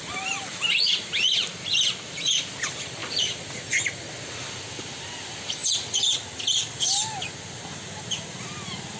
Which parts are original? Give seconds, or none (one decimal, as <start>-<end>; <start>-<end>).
0.0-9.0